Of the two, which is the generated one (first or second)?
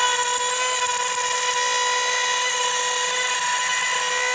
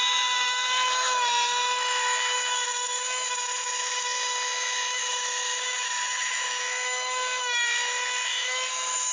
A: second